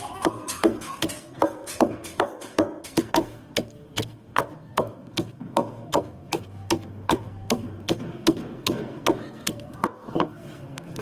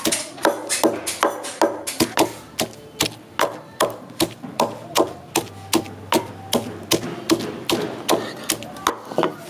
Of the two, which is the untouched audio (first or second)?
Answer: second